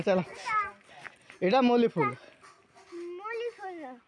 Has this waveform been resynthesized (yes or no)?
no